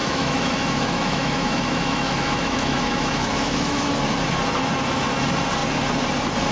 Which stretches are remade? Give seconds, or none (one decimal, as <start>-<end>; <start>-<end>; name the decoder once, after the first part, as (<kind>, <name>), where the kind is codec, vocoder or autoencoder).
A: 0.0-3.9 (autoencoder, DAC-VAE)